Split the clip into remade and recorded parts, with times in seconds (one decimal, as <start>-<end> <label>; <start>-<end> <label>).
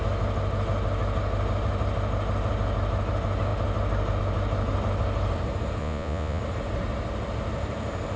0.0-5.8 recorded; 5.8-6.4 remade; 6.4-8.2 recorded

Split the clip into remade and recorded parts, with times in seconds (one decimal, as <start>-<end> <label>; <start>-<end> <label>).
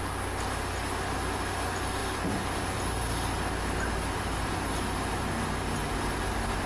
0.0-6.7 recorded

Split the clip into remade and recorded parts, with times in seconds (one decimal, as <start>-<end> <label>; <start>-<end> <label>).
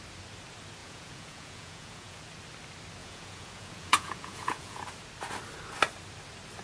0.0-0.8 recorded; 0.8-2.2 remade; 2.2-3.0 recorded; 3.0-4.8 remade; 4.8-6.6 recorded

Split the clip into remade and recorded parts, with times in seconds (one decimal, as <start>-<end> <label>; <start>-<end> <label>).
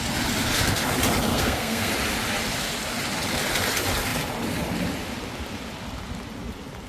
0.0-1.3 recorded; 1.3-1.9 remade; 1.9-6.9 recorded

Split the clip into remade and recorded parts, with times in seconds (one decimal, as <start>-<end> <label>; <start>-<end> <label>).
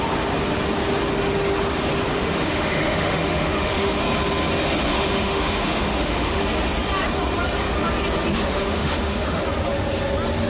0.0-2.1 recorded; 2.1-4.0 remade; 4.0-4.9 recorded; 4.9-6.4 remade; 6.4-8.5 recorded; 8.5-9.4 remade; 9.4-10.5 recorded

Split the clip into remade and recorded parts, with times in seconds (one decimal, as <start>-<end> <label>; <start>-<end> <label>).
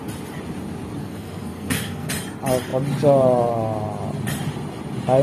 0.0-1.0 recorded; 1.0-2.1 remade; 2.1-5.2 recorded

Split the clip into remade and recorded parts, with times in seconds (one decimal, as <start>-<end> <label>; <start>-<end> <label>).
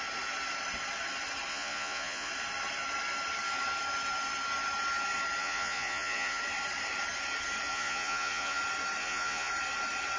0.0-1.5 recorded; 1.5-2.3 remade; 2.3-5.4 recorded; 5.4-6.4 remade; 6.4-7.7 recorded; 7.7-8.6 remade; 8.6-9.0 recorded; 9.0-9.5 remade; 9.5-10.2 recorded